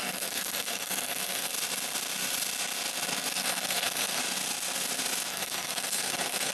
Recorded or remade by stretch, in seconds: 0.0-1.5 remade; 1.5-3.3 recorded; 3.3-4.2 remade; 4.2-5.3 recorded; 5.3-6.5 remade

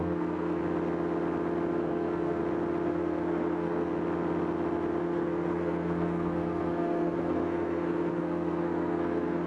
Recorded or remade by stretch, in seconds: 0.0-0.6 remade; 0.6-1.8 recorded; 1.8-2.4 remade; 2.4-2.9 recorded; 2.9-3.9 remade; 3.9-5.0 recorded; 5.0-9.5 remade

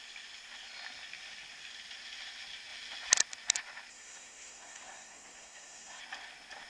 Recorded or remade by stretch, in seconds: 0.0-3.9 recorded; 3.9-6.0 remade; 6.0-6.7 recorded

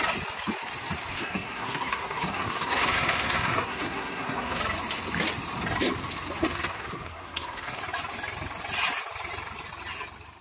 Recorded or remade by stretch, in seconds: 0.0-1.1 recorded; 1.1-4.6 remade; 4.6-6.4 recorded; 6.4-7.8 remade; 7.8-10.4 recorded

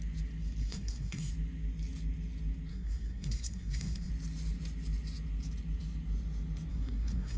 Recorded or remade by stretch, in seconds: 0.0-0.6 recorded; 0.6-1.3 remade; 1.3-2.7 recorded; 2.7-4.1 remade; 4.1-6.7 recorded; 6.7-7.4 remade

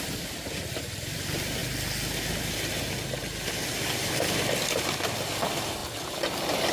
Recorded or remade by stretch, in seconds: 0.0-6.7 recorded